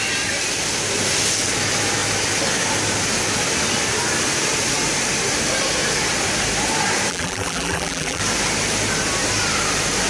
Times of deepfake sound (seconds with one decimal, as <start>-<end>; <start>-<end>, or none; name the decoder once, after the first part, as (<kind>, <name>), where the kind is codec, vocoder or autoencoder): 7.1-8.2 (vocoder, BigVGAN v2)